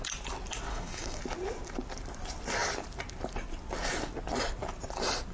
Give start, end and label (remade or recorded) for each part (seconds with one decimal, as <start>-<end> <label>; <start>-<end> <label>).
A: 0.0-0.7 recorded; 0.7-1.2 remade; 1.2-5.3 recorded